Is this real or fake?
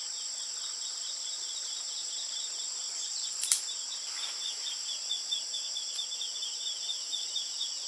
real